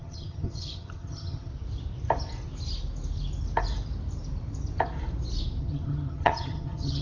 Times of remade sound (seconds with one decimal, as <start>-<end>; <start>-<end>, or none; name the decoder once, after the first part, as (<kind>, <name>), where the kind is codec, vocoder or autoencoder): 0.0-1.5 (vocoder, HiFi-GAN); 5.6-7.0